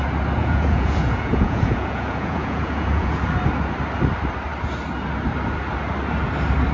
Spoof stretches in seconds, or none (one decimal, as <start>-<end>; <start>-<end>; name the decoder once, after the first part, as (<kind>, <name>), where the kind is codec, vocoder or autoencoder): 0.4-3.2 (vocoder, Vocos)